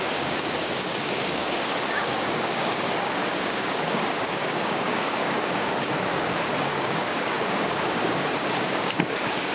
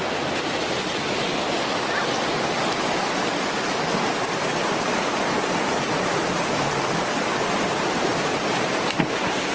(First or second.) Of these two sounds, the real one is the second